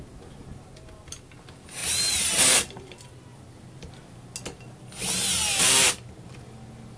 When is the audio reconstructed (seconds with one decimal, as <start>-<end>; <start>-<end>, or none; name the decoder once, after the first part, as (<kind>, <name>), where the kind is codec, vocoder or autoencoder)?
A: none